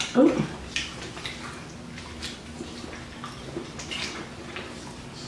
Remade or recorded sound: recorded